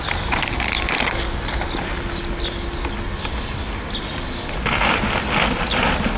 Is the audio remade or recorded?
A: recorded